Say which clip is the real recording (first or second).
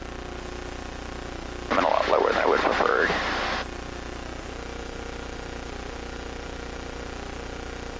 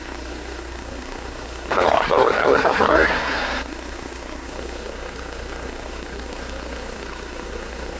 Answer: first